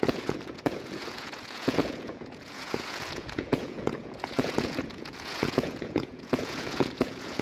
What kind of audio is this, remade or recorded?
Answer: remade